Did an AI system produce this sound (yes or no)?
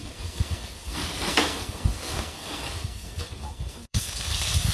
yes